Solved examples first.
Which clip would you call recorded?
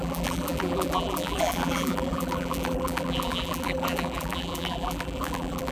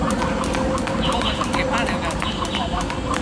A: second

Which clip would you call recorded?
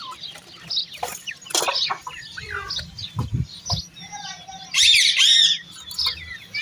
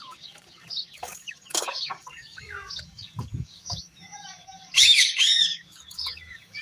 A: first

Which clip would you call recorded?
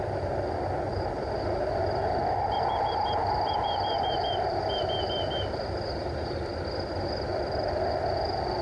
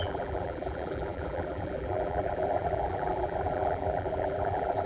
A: first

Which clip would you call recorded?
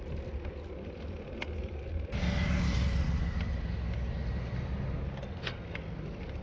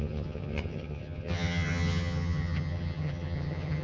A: first